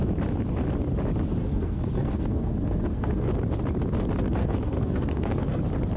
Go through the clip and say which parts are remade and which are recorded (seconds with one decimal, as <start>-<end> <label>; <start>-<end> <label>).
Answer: 0.0-1.4 recorded; 1.4-3.3 remade; 3.3-4.4 recorded; 4.4-5.6 remade; 5.6-6.0 recorded